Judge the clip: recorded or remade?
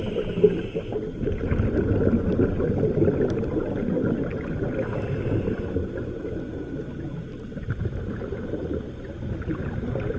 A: recorded